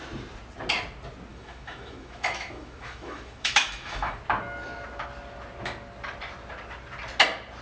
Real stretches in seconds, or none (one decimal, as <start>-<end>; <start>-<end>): 0.0-1.3; 4.2-7.6